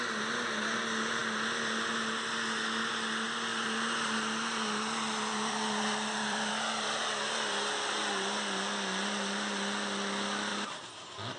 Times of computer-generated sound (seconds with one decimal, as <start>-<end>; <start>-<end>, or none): 3.5-6.5; 10.5-11.4